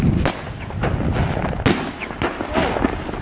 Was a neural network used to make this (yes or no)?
no